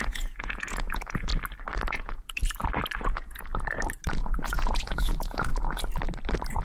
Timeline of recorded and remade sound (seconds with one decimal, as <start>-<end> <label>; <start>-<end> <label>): 0.0-1.3 remade; 1.3-1.9 recorded; 1.9-2.4 remade; 2.4-3.0 recorded; 3.0-3.5 remade; 3.5-4.2 recorded; 4.2-5.5 remade; 5.5-6.6 recorded